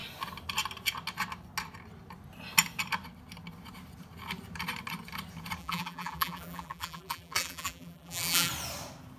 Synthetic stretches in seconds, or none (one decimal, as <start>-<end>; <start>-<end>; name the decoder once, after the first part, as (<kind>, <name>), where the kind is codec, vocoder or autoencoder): 5.6-8.5 (vocoder, BigVGAN v2)